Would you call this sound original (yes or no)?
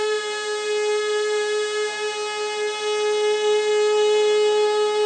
yes